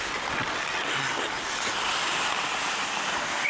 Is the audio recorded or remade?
recorded